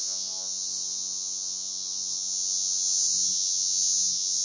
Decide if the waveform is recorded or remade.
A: remade